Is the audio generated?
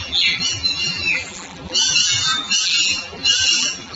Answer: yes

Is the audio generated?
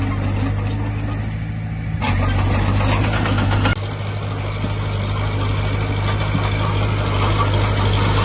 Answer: no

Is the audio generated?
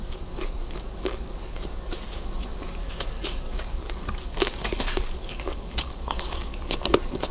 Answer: yes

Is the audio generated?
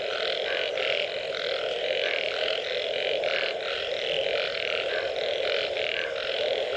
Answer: no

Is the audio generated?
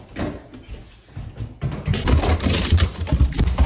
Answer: no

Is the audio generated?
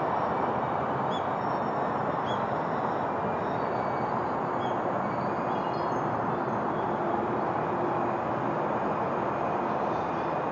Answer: no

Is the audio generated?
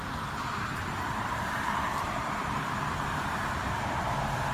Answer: no